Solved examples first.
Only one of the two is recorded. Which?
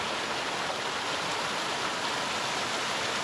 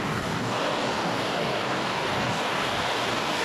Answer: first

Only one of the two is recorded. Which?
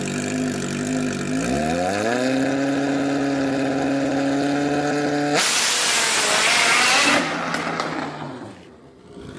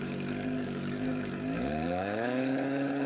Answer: first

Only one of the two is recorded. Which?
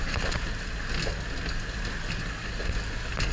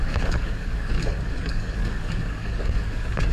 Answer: first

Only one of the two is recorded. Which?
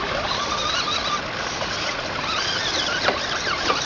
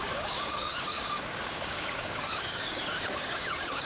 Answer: first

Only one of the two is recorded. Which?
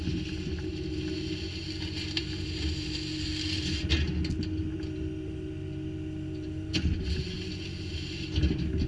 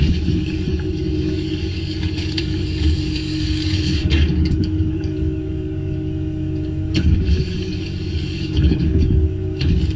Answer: first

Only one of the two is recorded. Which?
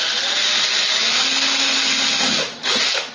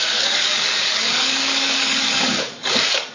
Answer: first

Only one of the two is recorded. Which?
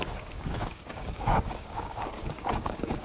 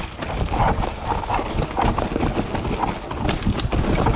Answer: second